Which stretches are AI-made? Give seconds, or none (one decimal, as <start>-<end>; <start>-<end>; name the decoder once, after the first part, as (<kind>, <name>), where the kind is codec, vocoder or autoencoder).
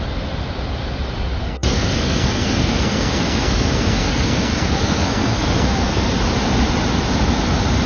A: 1.4-6.1 (codec, SNAC)